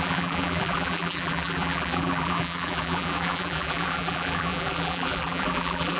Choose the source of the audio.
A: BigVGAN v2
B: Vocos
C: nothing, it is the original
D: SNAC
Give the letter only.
A